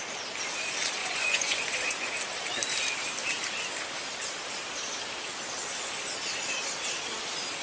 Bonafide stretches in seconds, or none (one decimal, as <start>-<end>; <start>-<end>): 0.0-1.0; 2.1-7.6